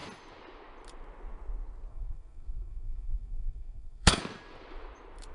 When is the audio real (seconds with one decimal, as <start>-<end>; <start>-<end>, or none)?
0.0-1.9; 4.2-5.3